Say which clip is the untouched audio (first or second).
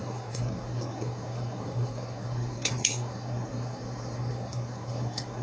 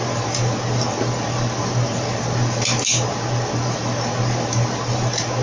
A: second